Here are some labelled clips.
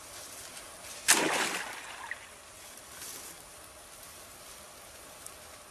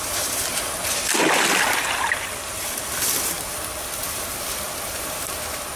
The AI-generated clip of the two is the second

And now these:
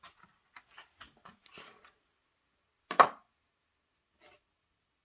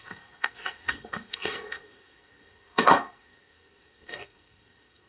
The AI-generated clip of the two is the second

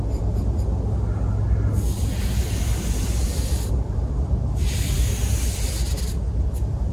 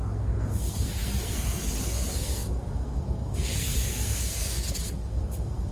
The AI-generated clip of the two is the second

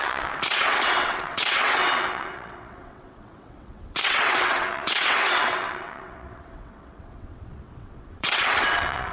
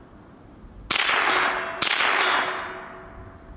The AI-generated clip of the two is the first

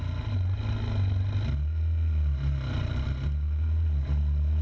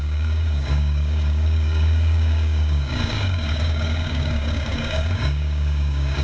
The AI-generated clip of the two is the second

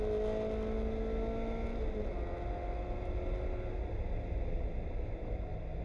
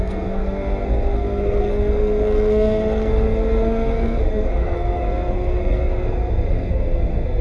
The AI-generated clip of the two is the second